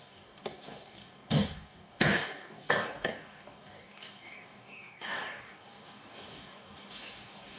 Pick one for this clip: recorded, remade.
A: remade